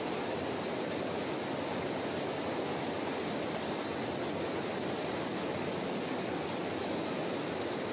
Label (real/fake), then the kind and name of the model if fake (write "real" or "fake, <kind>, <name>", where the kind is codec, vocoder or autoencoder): real